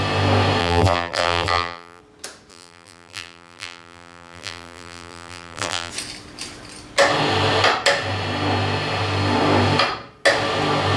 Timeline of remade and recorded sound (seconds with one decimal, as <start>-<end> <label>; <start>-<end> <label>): 0.0-0.6 recorded; 0.6-2.0 remade; 2.0-2.5 recorded; 2.5-5.9 remade; 5.9-11.0 recorded